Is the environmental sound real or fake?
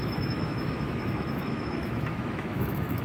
fake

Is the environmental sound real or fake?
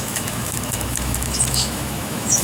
fake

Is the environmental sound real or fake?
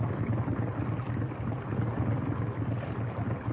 real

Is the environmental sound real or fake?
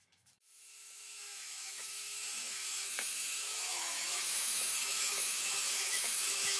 fake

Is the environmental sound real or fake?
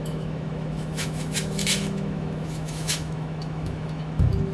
fake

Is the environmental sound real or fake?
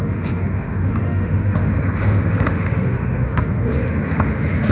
fake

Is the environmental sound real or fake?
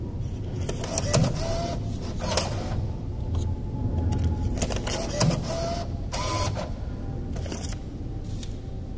real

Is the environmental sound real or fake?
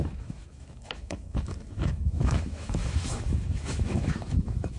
fake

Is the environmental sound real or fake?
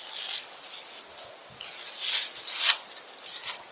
real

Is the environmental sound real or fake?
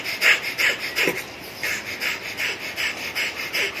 real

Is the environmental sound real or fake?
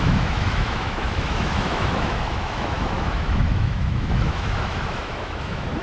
fake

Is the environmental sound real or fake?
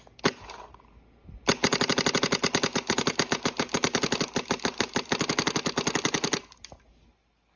real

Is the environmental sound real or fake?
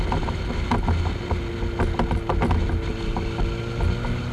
real